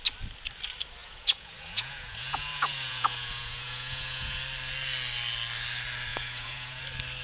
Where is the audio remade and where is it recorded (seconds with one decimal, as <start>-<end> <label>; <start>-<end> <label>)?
0.0-1.0 recorded; 1.0-4.4 remade; 4.4-6.1 recorded; 6.1-6.8 remade; 6.8-7.2 recorded